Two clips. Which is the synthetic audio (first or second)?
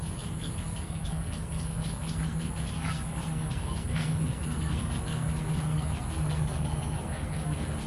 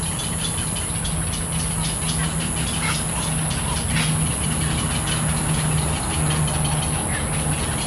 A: first